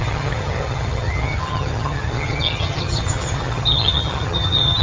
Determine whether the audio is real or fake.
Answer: fake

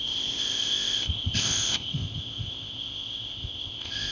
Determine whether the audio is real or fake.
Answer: fake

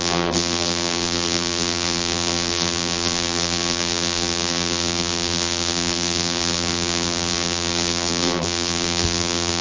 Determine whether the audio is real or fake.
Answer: fake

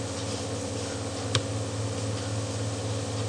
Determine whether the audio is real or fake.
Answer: real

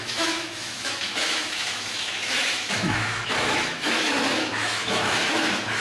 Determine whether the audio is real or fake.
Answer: fake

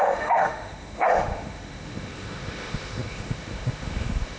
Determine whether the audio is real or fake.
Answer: fake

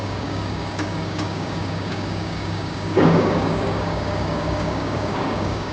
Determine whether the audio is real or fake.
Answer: fake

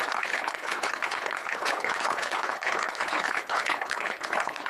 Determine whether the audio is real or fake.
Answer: fake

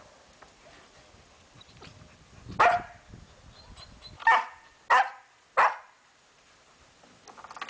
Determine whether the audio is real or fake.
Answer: real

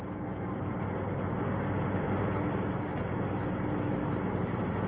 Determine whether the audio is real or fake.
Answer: real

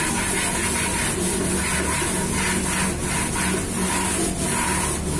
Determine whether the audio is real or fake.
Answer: real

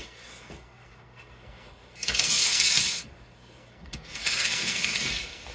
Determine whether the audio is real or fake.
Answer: fake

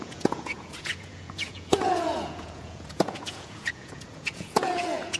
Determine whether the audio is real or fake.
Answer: fake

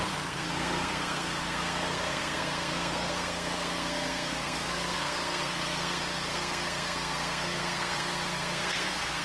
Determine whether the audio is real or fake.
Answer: fake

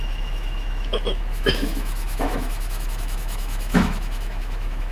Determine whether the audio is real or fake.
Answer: fake